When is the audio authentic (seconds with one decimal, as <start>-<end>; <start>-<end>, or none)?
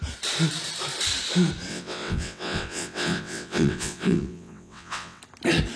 0.0-1.7; 5.2-5.8